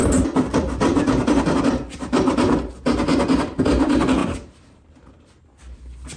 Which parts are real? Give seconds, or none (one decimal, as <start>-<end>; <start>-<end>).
0.0-4.2; 4.9-6.2